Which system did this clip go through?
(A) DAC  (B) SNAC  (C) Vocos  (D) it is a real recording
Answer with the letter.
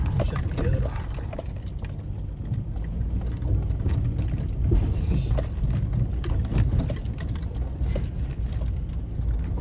D